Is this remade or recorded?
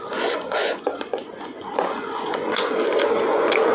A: remade